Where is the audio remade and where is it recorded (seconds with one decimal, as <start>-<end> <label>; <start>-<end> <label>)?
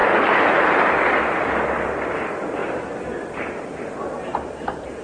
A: 0.0-0.7 remade; 0.7-4.3 recorded; 4.3-5.0 remade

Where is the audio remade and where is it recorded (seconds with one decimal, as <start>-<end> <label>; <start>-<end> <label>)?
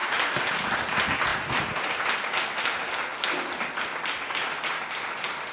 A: 0.0-5.5 recorded